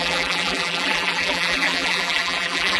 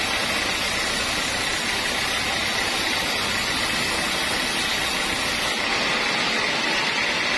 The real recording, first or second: second